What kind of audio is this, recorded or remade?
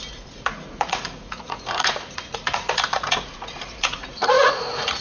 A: remade